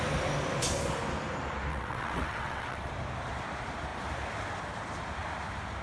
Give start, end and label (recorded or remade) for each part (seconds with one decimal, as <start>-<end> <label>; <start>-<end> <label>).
0.0-1.7 recorded; 1.7-2.9 remade; 2.9-5.8 recorded